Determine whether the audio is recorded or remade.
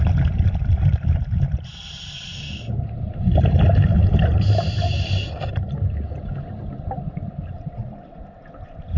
recorded